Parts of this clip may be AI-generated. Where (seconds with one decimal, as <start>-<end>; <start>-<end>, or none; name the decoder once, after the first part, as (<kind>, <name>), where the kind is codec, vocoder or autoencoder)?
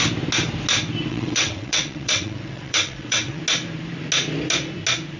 1.1-3.4 (vocoder, WaveNeXt)